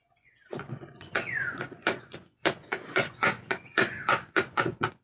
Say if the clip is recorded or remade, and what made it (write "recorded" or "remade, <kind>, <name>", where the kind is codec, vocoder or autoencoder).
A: remade, vocoder, Vocos